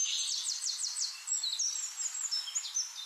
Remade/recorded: recorded